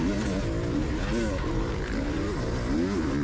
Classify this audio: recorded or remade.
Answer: recorded